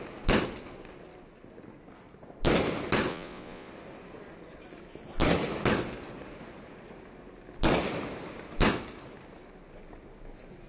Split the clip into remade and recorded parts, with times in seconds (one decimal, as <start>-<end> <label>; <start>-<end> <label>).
0.0-3.1 recorded; 3.1-3.7 remade; 3.7-10.7 recorded